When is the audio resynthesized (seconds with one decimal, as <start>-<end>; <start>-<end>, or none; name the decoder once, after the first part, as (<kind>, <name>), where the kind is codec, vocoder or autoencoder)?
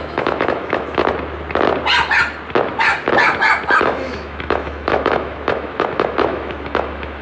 0.0-1.0 (autoencoder, DAC-VAE); 3.8-7.2